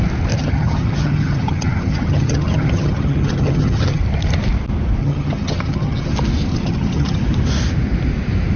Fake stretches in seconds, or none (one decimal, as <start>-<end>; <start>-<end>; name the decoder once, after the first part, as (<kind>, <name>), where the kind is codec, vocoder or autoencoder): 0.4-4.0 (vocoder, HiFi-GAN); 5.0-6.1; 6.5-7.2